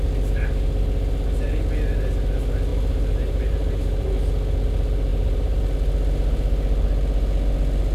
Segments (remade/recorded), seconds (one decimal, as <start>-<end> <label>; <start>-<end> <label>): 0.0-2.7 recorded; 2.7-4.1 remade; 4.1-5.1 recorded; 5.1-5.6 remade; 5.6-7.9 recorded